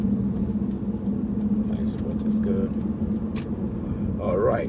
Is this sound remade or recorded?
recorded